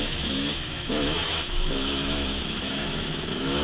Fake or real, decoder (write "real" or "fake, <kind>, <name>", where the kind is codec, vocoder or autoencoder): fake, autoencoder, DAC-VAE